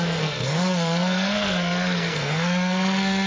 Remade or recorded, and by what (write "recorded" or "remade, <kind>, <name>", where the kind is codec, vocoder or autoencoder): remade, codec, SNAC